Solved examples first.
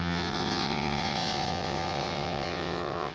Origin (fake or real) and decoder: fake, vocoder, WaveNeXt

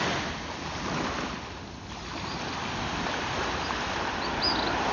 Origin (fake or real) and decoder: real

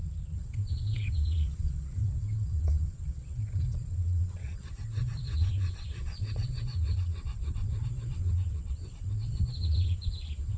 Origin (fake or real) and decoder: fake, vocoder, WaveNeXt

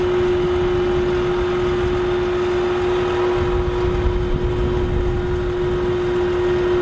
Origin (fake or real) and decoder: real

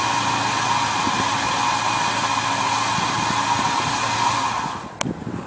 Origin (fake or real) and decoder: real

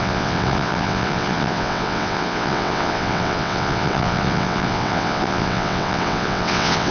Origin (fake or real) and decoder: fake, vocoder, WaveNeXt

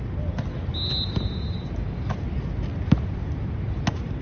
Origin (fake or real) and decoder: real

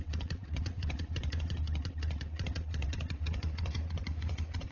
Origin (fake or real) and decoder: fake, vocoder, WaveNeXt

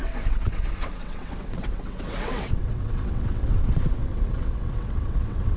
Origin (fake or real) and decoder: fake, vocoder, WaveNeXt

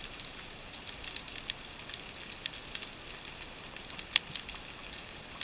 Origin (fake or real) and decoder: real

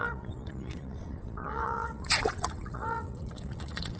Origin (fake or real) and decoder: fake, vocoder, WaveNeXt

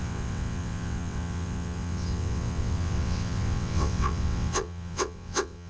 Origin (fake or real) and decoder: fake, vocoder, WaveNeXt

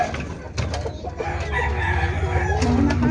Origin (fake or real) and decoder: real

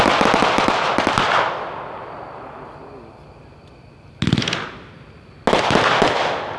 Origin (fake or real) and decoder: real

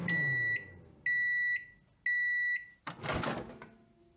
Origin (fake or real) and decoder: real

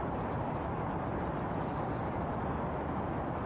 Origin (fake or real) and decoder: real